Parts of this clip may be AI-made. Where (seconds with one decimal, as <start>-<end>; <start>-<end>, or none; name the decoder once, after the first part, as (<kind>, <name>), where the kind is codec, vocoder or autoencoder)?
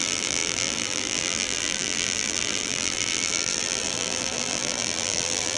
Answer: 0.0-5.6 (vocoder, BigVGAN v2)